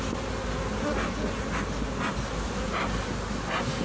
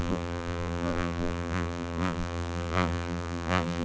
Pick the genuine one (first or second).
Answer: first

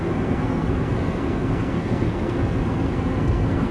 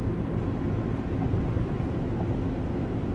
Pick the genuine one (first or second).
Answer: second